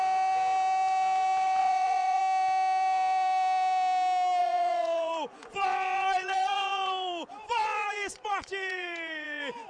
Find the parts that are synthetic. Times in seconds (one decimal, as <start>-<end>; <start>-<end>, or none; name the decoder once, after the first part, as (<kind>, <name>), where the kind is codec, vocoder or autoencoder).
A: 1.6-2.2 (vocoder, Vocos); 4.4-9.7